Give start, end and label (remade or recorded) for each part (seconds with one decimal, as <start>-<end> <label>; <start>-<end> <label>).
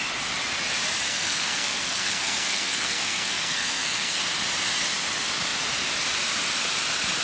0.0-1.1 recorded; 1.1-4.2 remade; 4.2-7.2 recorded